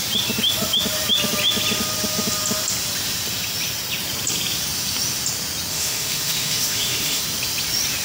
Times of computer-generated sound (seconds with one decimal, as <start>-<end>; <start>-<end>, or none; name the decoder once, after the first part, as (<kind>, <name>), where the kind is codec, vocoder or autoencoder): 5.7-7.2 (autoencoder, DAC-VAE)